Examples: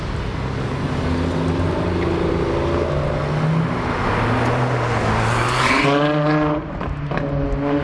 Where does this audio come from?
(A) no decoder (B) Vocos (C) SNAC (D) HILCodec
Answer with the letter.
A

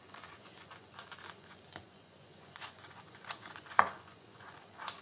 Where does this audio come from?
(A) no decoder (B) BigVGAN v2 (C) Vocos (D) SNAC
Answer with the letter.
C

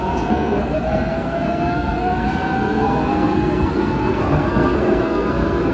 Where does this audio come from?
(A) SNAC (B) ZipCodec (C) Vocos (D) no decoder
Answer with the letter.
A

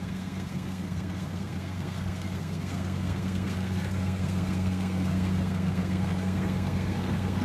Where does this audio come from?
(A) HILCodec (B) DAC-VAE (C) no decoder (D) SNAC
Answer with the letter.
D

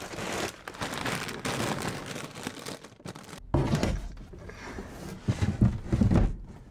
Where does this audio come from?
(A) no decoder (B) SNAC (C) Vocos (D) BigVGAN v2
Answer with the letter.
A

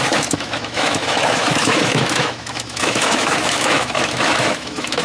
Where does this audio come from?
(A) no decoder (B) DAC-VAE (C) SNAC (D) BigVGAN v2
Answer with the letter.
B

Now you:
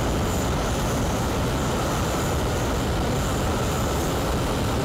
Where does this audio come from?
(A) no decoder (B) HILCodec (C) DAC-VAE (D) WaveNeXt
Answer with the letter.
A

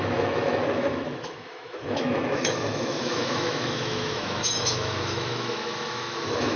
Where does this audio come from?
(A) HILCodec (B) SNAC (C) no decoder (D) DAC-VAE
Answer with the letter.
D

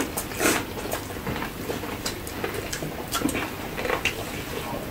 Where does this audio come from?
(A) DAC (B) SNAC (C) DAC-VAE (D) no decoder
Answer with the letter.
D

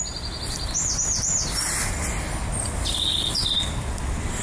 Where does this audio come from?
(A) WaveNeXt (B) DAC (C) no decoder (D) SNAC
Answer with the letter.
C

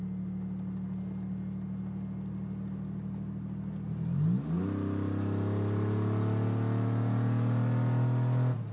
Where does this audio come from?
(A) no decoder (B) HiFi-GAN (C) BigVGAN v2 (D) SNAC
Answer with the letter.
A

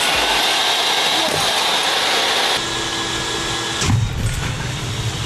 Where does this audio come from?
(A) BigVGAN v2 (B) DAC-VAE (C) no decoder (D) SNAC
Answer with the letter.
C